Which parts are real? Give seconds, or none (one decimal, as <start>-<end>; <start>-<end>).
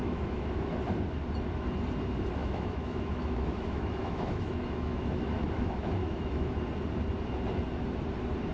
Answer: 0.7-2.4; 6.5-8.5